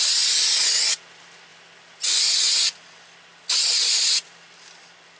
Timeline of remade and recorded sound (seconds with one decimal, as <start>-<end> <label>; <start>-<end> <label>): 0.0-5.2 recorded